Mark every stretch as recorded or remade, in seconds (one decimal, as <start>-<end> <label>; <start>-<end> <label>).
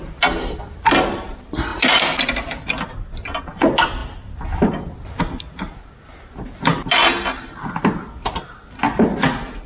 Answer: 0.0-9.7 recorded